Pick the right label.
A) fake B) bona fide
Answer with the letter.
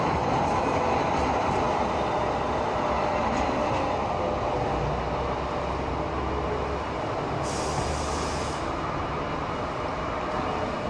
B